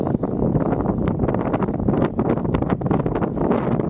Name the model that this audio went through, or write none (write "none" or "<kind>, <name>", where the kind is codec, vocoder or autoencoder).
none